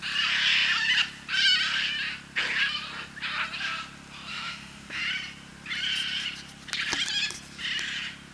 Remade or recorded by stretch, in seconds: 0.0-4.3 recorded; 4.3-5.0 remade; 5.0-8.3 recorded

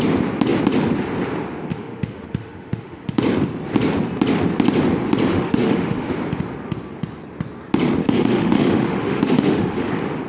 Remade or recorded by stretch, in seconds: 0.0-1.7 recorded; 1.7-3.2 remade; 3.2-5.3 recorded; 5.3-6.1 remade; 6.1-8.0 recorded; 8.0-9.9 remade; 9.9-10.3 recorded

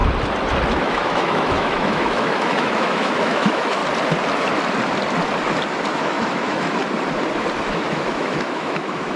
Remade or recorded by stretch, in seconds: 0.0-0.7 recorded; 0.7-3.8 remade; 3.8-5.9 recorded; 5.9-6.8 remade; 6.8-7.6 recorded; 7.6-9.2 remade

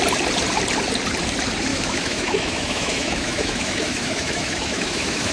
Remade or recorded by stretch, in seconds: 0.0-1.7 recorded; 1.7-5.3 remade